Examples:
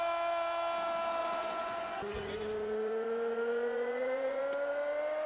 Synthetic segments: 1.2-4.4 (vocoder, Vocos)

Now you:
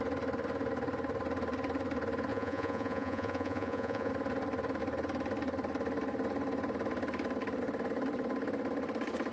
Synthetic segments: 2.3-4.1 (vocoder, Vocos)

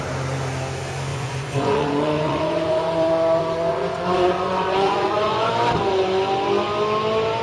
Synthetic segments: 1.1-5.5 (vocoder, Vocos)